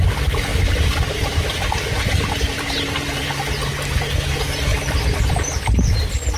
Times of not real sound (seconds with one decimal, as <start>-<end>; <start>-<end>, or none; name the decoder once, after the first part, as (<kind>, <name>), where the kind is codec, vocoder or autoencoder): 0.5-3.4 (vocoder, BigVGAN v2); 4.7-5.2